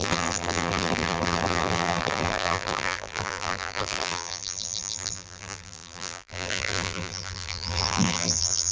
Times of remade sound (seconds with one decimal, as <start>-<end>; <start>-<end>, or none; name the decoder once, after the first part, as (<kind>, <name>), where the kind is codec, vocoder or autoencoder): 0.0-8.7 (vocoder, BigVGAN v2)